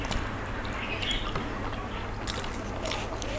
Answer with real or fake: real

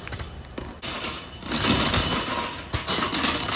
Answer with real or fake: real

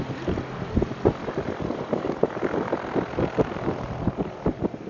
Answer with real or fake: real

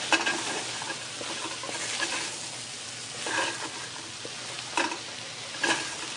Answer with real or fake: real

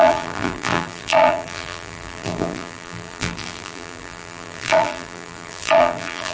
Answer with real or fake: fake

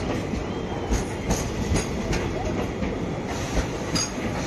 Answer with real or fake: real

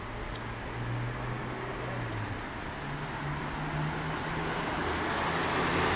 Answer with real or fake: real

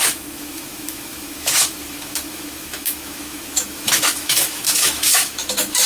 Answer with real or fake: fake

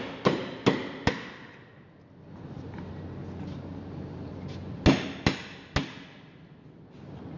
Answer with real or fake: real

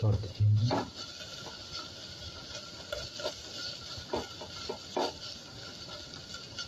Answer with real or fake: real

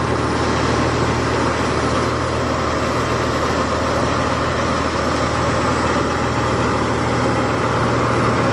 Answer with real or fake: real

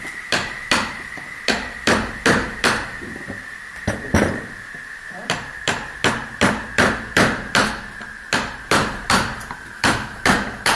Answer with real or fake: fake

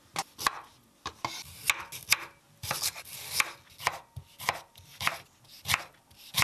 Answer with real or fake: real